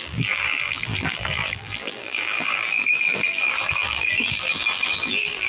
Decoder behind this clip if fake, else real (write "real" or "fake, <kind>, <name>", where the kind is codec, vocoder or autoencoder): fake, vocoder, BigVGAN v2